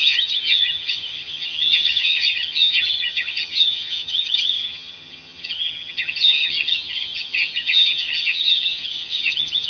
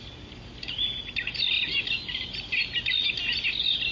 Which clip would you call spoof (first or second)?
first